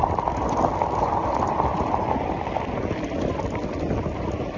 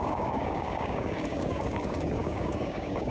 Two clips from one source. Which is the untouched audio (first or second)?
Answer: first